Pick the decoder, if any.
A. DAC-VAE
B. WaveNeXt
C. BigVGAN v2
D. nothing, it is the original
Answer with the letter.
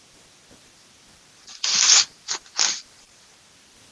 D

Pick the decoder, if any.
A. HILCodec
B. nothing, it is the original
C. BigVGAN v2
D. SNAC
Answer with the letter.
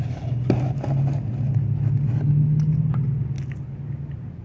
B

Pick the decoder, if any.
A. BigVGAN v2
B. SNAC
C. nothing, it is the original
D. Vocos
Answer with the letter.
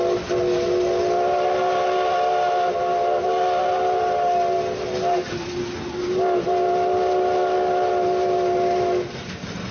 C